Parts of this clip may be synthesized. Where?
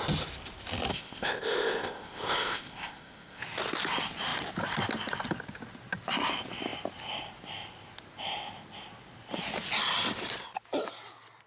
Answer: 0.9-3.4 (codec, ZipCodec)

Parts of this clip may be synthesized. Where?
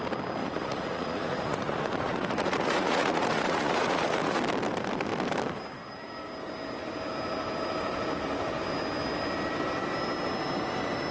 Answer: 0.4-4.4 (vocoder, Vocos)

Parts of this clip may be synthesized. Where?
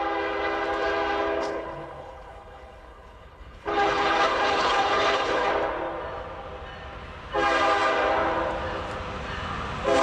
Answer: 1.4-5.5 (codec, HILCodec)